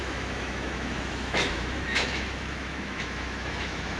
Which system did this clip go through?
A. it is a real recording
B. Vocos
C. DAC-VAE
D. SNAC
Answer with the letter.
C